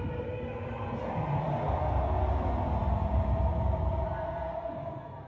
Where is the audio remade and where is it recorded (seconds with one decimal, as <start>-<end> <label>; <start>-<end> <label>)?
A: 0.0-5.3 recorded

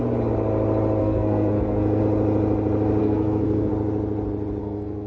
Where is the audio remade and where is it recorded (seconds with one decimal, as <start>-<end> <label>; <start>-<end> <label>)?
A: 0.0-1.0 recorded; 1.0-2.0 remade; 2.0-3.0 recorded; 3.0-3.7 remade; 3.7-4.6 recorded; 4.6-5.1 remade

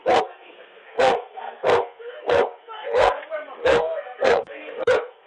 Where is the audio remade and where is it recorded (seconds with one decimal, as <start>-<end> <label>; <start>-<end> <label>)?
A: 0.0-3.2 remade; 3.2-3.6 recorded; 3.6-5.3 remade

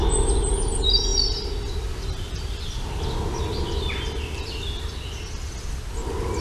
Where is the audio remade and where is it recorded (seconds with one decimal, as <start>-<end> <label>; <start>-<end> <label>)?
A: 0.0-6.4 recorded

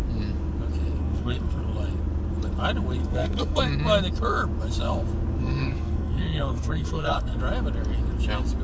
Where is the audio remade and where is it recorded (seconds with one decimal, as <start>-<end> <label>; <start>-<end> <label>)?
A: 0.0-1.0 recorded; 1.0-1.6 remade; 1.6-3.0 recorded; 3.0-3.6 remade; 3.6-5.4 recorded; 5.4-7.4 remade; 7.4-8.6 recorded

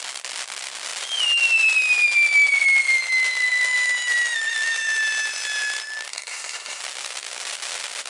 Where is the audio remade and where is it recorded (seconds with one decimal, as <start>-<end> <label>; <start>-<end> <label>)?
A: 0.0-6.1 recorded; 6.1-6.8 remade; 6.8-8.1 recorded

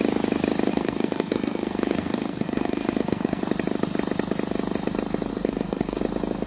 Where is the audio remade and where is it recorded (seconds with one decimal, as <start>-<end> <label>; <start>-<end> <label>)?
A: 0.0-0.7 recorded; 0.7-3.4 remade; 3.4-5.3 recorded; 5.3-6.0 remade; 6.0-6.5 recorded